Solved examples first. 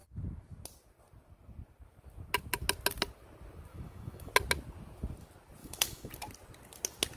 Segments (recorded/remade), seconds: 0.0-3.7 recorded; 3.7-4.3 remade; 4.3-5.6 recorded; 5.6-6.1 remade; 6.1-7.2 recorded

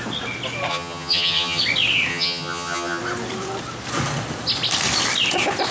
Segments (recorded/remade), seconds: 0.0-0.7 recorded; 0.7-1.6 remade; 1.6-2.1 recorded; 2.1-3.0 remade; 3.0-5.7 recorded

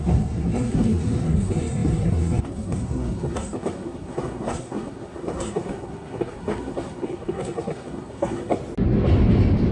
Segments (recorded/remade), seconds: 0.0-8.6 remade; 8.6-9.7 recorded

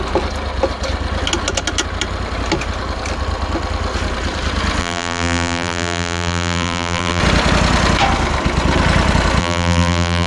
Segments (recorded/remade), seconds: 0.0-4.8 recorded; 4.8-7.2 remade; 7.2-9.4 recorded; 9.4-10.3 remade